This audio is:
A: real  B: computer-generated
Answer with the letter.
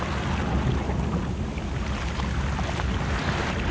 A